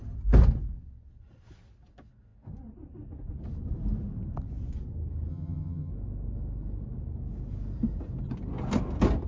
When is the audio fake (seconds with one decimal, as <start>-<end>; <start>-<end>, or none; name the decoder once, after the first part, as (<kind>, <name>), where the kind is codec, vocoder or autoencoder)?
5.3-5.9 (vocoder, HiFi-GAN)